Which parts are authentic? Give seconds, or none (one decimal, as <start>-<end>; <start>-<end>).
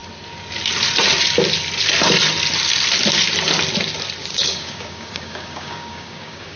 0.0-4.2